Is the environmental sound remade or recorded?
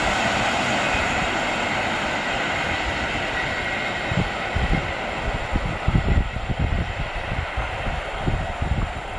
recorded